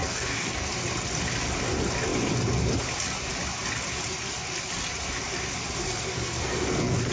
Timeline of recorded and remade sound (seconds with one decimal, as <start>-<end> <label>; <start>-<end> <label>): 0.0-0.7 remade; 0.7-5.8 recorded; 5.8-7.1 remade